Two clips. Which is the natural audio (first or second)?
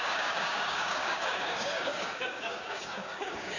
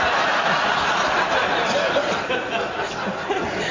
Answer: second